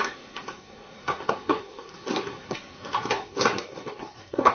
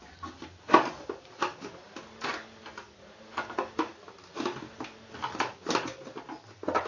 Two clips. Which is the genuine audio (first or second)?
second